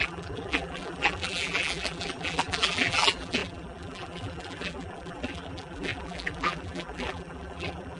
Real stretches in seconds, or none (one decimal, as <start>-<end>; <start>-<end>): none